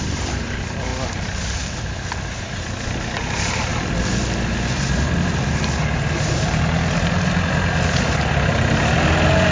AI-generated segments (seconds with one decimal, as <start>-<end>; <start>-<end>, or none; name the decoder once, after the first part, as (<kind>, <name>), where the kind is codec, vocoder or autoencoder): none